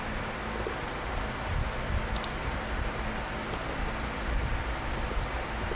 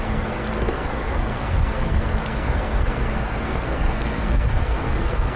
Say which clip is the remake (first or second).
second